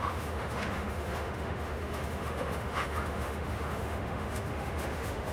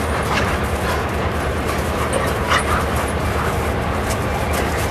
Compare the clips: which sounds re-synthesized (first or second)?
first